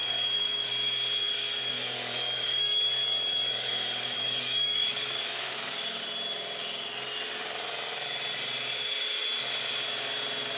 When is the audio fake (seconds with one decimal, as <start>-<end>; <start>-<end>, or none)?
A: 0.0-0.7; 1.2-6.0